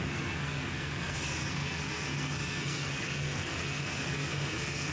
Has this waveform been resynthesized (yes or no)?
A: yes